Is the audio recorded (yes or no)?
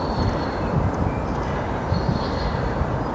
no